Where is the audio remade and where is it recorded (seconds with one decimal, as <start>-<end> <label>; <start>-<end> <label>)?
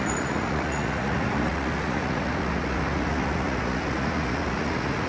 0.0-5.1 remade